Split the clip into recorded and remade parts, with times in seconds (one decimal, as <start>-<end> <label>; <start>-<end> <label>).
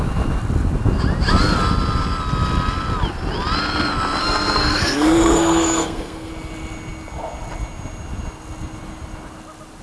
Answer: 0.0-4.2 recorded; 4.2-6.3 remade; 6.3-9.8 recorded